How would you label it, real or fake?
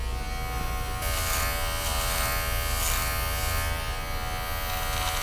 real